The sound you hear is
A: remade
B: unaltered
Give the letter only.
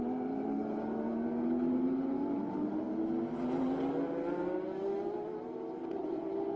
B